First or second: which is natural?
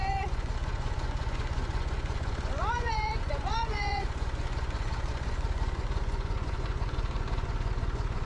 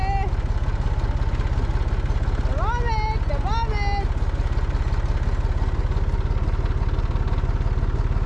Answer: second